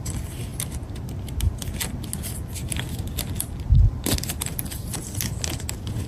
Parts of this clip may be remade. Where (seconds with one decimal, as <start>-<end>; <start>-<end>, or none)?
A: none